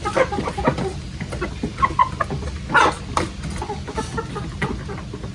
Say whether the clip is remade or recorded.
recorded